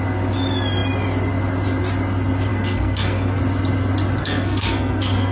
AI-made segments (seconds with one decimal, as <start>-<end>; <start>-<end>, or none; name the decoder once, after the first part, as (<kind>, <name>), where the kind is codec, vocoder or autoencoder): 2.5-3.4 (codec, SNAC); 4.2-5.3